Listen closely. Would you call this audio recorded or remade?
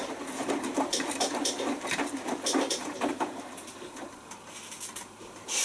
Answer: remade